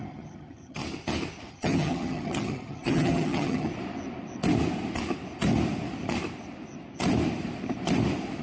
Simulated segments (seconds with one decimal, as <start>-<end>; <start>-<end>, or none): 0.0-0.8; 1.5-3.7